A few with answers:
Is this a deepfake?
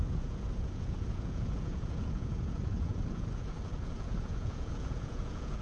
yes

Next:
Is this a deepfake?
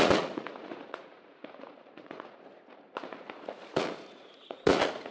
yes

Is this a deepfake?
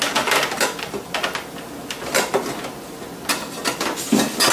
no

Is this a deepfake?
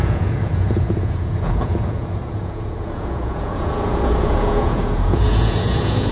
yes